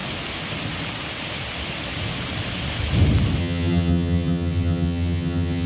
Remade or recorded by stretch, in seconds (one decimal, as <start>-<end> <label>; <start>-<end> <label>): 0.0-3.4 recorded; 3.4-5.7 remade